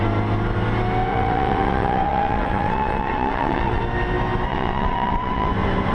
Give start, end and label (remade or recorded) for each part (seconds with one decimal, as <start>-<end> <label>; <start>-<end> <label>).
0.0-1.1 recorded; 1.1-3.8 remade; 3.8-4.5 recorded; 4.5-5.5 remade; 5.5-5.9 recorded